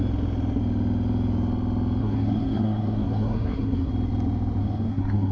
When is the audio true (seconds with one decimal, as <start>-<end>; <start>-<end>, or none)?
0.0-2.0; 3.9-4.6

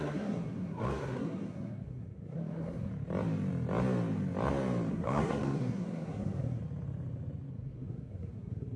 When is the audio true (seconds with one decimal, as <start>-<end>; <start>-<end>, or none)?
2.9-4.9; 6.6-7.5

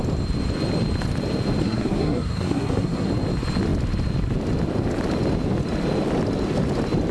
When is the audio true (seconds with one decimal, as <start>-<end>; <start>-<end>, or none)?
0.0-1.6; 3.1-7.1

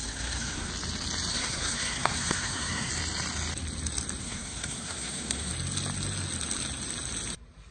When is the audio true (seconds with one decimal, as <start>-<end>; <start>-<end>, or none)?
0.7-1.3; 2.9-4.2; 5.5-7.7

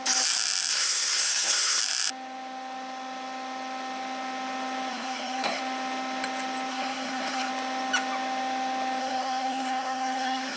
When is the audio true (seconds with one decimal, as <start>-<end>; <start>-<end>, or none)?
0.0-0.7; 1.8-4.9; 5.6-6.7; 7.5-9.0